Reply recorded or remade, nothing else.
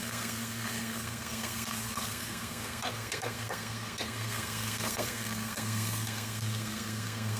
remade